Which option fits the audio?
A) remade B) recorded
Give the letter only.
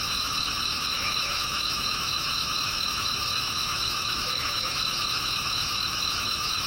A